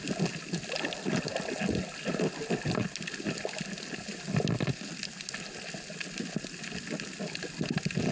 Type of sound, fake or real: real